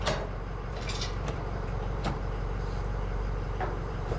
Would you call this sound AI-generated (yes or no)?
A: yes